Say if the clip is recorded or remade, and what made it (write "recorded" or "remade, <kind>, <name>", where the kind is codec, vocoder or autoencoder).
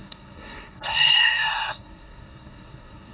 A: remade, codec, SNAC